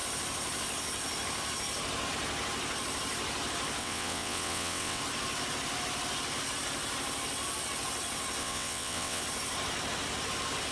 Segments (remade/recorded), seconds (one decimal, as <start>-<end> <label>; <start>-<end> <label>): 0.0-3.8 recorded; 3.8-5.0 remade; 5.0-8.4 recorded; 8.4-9.2 remade; 9.2-10.7 recorded